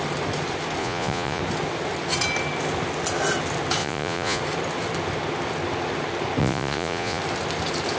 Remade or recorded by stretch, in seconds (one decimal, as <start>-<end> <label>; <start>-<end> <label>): 0.0-0.8 recorded; 0.8-1.4 remade; 1.4-3.8 recorded; 3.8-4.4 remade; 4.4-6.4 recorded; 6.4-7.2 remade; 7.2-8.0 recorded